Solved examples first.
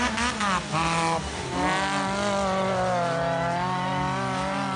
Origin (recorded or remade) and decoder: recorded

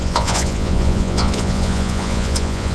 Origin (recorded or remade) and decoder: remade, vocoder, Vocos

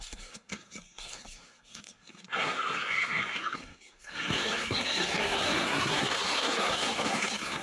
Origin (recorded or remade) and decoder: remade, codec, SNAC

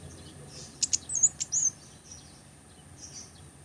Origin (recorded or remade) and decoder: recorded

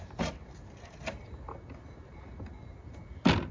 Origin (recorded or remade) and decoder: recorded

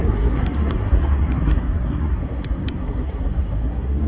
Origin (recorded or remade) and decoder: remade, codec, SNAC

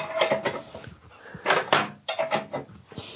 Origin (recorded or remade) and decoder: recorded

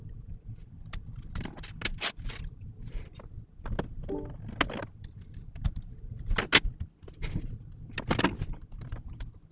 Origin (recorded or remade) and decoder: recorded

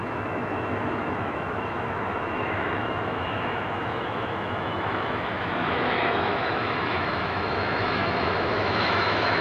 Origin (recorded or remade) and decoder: remade, autoencoder, DAC-VAE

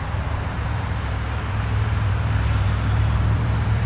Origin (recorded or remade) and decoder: remade, vocoder, BigVGAN v2